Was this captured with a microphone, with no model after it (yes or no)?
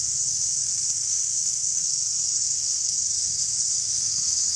no